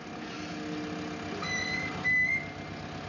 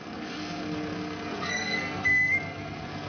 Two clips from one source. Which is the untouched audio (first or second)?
first